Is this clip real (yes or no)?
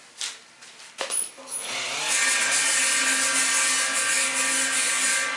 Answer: yes